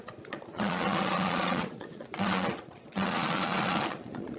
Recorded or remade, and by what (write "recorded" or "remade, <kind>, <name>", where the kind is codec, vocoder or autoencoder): remade, vocoder, Vocos